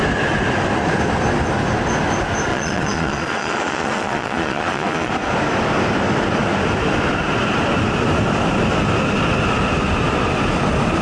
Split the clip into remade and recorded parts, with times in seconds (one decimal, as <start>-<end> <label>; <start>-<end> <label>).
0.0-2.5 recorded; 2.5-5.1 remade; 5.1-11.0 recorded